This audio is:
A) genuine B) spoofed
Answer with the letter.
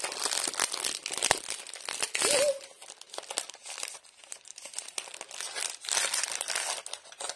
A